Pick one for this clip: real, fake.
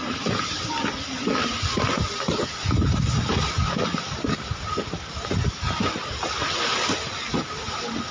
real